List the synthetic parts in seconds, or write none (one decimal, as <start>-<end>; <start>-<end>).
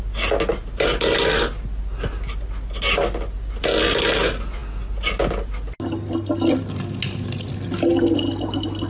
none